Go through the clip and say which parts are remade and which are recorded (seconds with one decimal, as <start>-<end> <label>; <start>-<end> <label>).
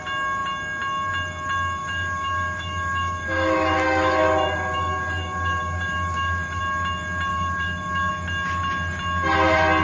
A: 0.0-1.8 recorded; 1.8-6.6 remade; 6.6-7.3 recorded; 7.3-8.1 remade; 8.1-9.8 recorded